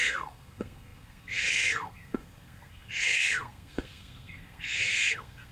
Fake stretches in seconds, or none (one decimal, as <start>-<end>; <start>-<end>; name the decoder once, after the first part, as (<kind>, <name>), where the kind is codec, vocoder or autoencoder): 0.0-5.5 (codec, SNAC)